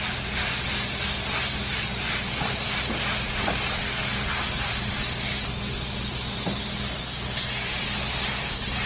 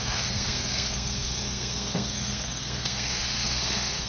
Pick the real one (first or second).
first